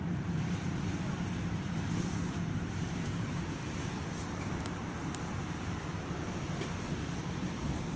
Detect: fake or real fake